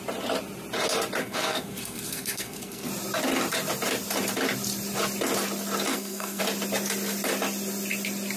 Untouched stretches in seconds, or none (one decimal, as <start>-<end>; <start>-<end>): 0.0-1.2; 2.9-5.9; 6.4-8.4